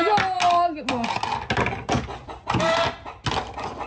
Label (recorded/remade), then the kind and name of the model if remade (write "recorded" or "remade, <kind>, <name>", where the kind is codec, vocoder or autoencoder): recorded